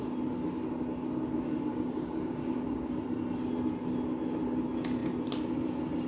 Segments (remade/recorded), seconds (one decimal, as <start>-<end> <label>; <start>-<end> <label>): 0.0-1.7 recorded; 1.7-3.0 remade; 3.0-6.1 recorded